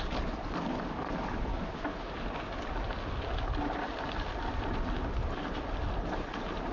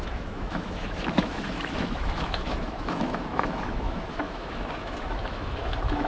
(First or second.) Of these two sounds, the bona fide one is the first